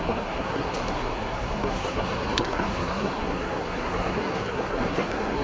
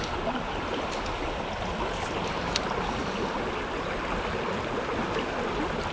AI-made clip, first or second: first